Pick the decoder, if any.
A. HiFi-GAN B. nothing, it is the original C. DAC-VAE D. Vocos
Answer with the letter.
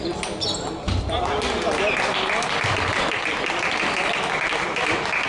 B